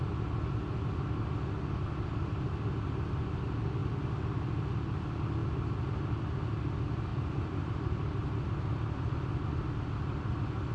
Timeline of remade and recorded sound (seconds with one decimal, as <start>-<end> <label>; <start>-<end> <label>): 0.0-7.1 recorded; 7.1-9.1 remade; 9.1-10.7 recorded